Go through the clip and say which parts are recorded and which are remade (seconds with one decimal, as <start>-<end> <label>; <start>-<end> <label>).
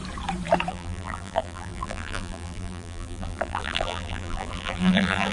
0.0-0.7 recorded; 0.7-5.3 remade